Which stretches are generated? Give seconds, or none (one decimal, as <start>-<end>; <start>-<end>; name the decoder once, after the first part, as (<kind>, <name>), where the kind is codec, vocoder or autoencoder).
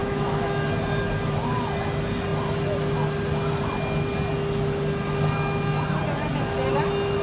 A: 0.0-0.7 (autoencoder, DAC-VAE)